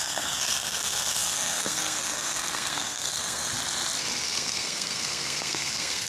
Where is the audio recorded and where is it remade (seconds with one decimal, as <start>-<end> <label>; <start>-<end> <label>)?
0.0-3.5 remade; 3.5-4.2 recorded; 4.2-6.1 remade